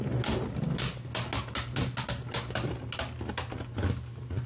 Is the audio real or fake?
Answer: real